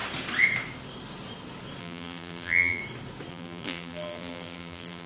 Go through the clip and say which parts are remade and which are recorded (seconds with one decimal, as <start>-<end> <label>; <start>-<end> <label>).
0.0-1.8 recorded; 1.8-2.8 remade; 2.8-3.3 recorded; 3.3-5.1 remade